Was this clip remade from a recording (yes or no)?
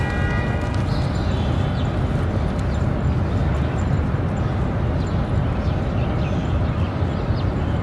no